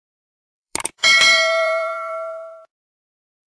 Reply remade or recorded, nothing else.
remade